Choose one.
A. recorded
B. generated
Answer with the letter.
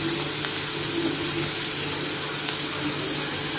A